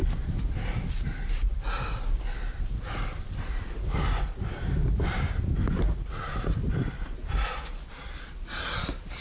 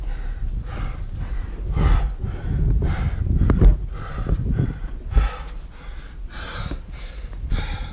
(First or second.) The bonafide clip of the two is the second